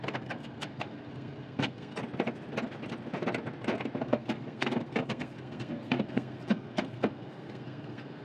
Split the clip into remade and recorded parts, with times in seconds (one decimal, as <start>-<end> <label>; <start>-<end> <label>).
0.0-2.0 remade; 2.0-4.0 recorded; 4.0-8.2 remade